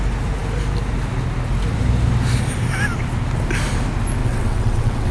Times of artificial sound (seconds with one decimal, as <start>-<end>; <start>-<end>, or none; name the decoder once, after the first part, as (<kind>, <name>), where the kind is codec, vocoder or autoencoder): 4.2-5.1 (vocoder, WaveNeXt)